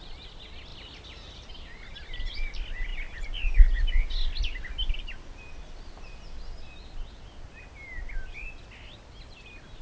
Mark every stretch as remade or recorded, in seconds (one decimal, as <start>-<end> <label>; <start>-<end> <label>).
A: 0.0-9.8 recorded